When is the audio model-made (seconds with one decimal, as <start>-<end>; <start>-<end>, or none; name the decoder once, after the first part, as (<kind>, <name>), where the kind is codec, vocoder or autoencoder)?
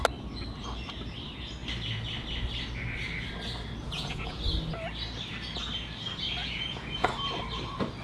3.8-4.4 (vocoder, Vocos); 6.4-7.1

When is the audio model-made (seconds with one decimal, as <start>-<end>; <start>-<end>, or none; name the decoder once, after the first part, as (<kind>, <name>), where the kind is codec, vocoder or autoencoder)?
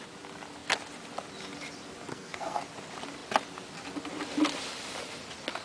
2.1-2.6 (codec, SNAC)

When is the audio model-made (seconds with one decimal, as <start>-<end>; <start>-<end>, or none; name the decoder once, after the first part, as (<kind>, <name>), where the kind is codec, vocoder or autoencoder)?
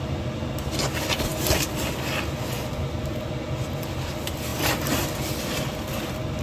none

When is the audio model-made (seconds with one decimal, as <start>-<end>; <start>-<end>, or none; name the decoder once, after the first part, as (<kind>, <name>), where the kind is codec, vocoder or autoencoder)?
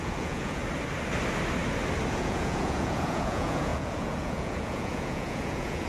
0.0-0.6 (vocoder, Vocos); 2.1-5.9